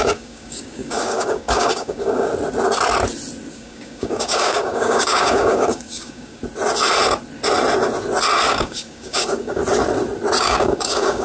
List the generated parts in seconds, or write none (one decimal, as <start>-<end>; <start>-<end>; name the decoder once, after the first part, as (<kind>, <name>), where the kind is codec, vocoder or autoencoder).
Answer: 0.0-2.3 (codec, DAC); 3.5-6.4; 8.5-9.6; 10.4-11.2